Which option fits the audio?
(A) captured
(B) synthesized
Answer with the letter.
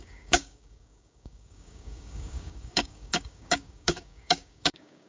B